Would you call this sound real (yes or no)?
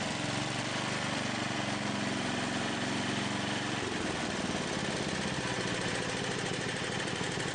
no